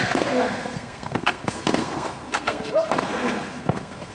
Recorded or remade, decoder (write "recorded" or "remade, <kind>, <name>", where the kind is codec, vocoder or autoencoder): remade, codec, SNAC